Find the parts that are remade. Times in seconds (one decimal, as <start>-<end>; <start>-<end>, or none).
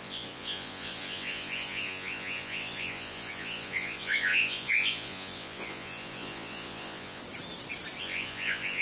0.0-7.2; 8.0-8.8